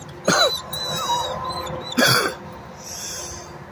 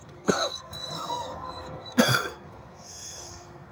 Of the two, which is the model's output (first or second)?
second